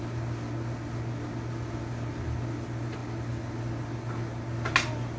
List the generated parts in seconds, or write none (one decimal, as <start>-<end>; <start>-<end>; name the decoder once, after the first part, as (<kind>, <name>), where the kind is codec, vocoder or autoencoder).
none